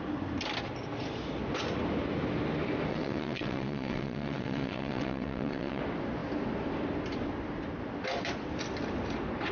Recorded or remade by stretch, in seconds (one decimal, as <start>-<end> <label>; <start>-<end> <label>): 0.0-2.9 recorded; 2.9-5.8 remade; 5.8-9.5 recorded